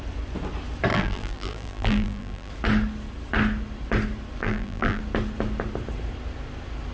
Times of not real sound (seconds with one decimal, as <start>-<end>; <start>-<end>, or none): 0.9-2.5; 4.4-5.0